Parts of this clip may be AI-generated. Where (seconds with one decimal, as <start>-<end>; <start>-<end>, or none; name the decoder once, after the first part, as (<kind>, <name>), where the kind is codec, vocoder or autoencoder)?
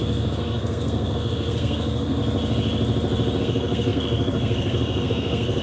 0.0-2.2 (codec, SNAC); 3.4-5.6